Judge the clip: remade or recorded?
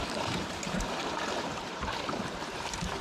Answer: remade